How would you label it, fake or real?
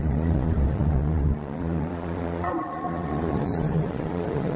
fake